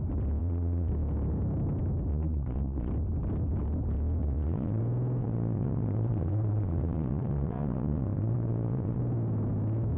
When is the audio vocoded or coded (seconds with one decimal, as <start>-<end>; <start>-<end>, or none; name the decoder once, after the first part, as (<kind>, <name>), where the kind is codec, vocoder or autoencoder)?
0.4-0.9 (vocoder, Vocos); 2.1-2.9; 4.2-4.8; 5.2-9.0